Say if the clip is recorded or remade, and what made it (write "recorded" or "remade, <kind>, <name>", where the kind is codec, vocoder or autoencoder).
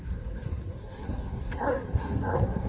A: remade, codec, SNAC